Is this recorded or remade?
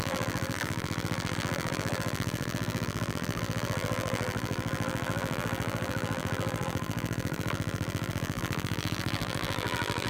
remade